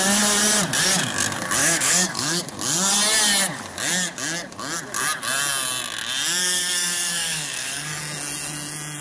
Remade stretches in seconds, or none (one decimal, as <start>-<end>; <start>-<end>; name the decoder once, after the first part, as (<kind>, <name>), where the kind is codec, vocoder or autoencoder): 1.6-2.4 (codec, DAC); 6.4-8.0